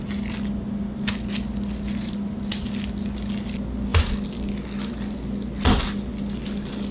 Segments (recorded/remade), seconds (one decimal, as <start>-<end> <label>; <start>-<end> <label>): 0.0-6.9 recorded